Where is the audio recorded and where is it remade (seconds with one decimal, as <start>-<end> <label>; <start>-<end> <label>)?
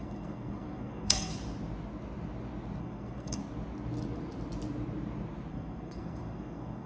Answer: 0.0-1.3 remade; 1.3-2.8 recorded; 2.8-3.4 remade; 3.4-5.5 recorded; 5.5-6.9 remade